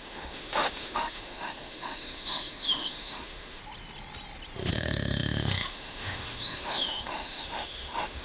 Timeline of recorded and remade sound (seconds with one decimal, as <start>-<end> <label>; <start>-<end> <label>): 0.0-3.6 remade; 3.6-4.7 recorded; 4.7-8.2 remade